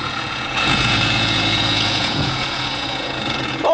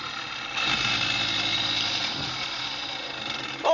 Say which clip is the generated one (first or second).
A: first